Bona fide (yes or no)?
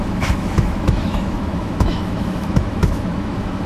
no